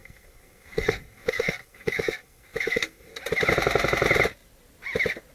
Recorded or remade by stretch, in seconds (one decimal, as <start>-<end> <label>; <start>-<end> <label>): 0.0-3.2 remade; 3.2-5.3 recorded